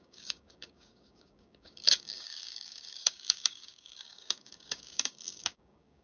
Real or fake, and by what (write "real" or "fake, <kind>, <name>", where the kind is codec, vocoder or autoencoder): fake, codec, DAC